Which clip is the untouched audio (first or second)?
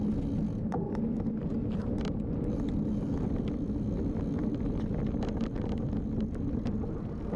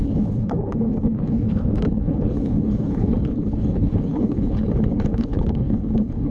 first